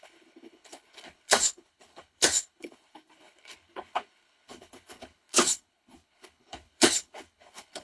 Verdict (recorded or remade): remade